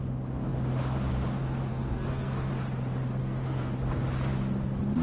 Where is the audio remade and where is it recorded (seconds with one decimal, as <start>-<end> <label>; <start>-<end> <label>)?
0.0-1.7 recorded; 1.7-2.5 remade; 2.5-3.2 recorded; 3.2-3.7 remade; 3.7-5.0 recorded